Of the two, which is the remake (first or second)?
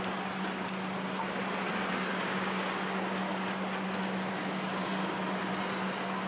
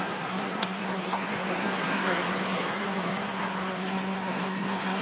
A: second